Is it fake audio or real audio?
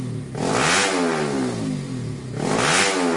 real